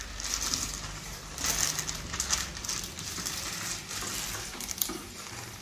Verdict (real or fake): real